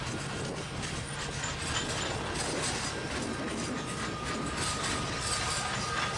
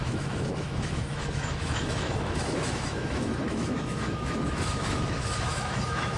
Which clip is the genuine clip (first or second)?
first